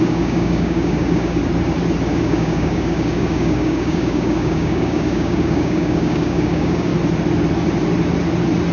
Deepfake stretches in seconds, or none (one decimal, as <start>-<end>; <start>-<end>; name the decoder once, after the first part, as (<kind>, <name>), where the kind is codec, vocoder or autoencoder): 0.0-1.4 (codec, DAC); 2.1-6.9